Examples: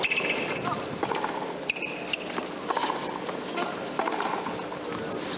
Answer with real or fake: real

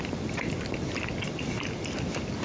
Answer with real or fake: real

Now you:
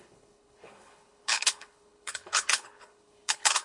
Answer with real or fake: fake